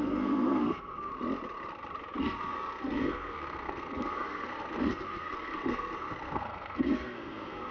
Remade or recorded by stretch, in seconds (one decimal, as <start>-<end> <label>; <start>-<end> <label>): 0.0-1.1 remade; 1.1-2.2 recorded; 2.2-7.7 remade